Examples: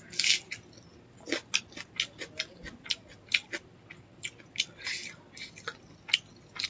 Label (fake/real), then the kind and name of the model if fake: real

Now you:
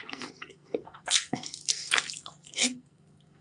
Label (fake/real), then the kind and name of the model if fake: fake, codec, SNAC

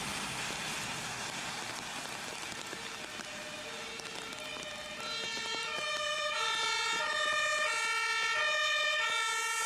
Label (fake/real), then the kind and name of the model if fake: real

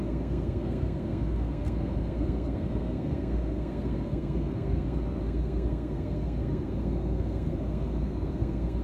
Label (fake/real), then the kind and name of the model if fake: fake, codec, SNAC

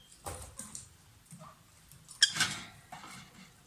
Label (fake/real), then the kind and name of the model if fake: real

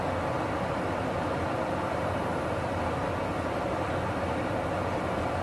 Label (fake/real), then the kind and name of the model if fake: real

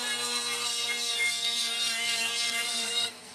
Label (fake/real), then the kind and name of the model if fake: fake, codec, SNAC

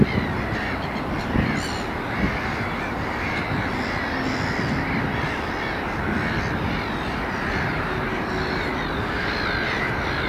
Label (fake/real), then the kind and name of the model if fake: real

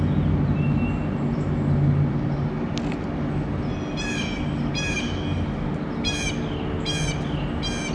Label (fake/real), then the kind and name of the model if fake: real